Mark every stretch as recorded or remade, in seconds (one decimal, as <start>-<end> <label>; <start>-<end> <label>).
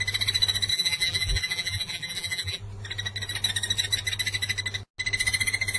0.0-0.7 recorded; 0.7-2.6 remade; 2.6-5.8 recorded